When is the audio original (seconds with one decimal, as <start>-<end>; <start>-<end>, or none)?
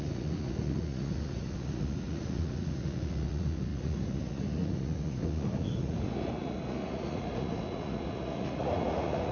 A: none